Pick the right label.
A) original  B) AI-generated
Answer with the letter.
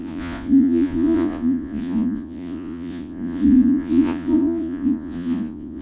B